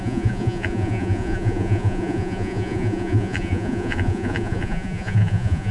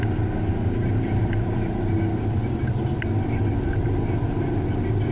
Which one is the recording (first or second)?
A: second